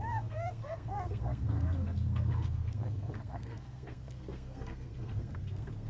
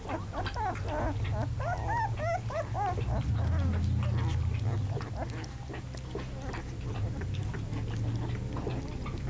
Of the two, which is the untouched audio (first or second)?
second